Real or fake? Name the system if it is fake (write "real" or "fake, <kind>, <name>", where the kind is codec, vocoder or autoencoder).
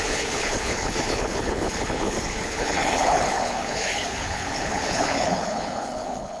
fake, codec, HILCodec